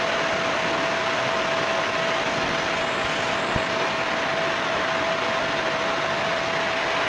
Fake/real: real